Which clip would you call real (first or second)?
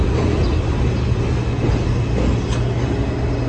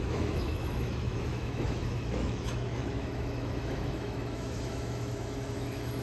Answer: first